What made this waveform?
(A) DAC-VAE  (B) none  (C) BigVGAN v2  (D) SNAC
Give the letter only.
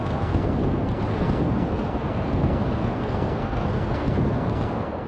D